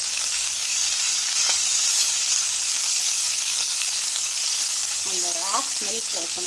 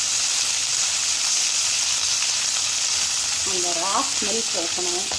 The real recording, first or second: second